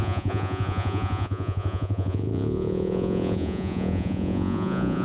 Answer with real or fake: fake